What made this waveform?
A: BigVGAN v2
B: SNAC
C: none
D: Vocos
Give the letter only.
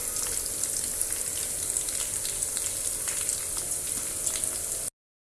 C